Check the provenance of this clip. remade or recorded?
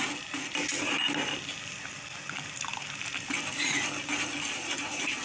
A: recorded